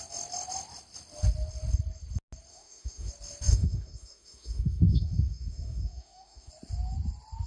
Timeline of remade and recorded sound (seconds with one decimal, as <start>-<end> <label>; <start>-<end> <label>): 0.0-2.5 recorded; 2.5-3.1 remade; 3.1-3.5 recorded; 3.5-6.5 remade; 6.5-7.5 recorded